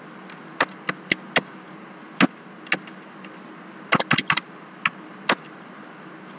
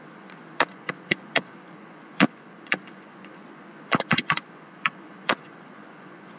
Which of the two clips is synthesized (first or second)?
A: second